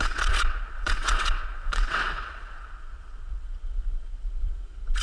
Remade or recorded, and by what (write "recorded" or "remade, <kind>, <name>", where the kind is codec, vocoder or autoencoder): remade, vocoder, WaveNeXt